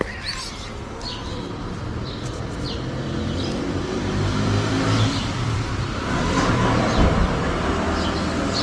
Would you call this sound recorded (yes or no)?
no